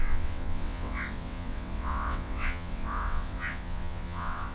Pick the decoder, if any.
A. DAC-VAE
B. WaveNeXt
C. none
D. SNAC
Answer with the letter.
B